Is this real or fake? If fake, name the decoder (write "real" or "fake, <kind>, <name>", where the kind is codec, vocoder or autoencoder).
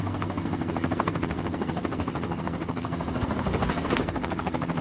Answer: fake, codec, SNAC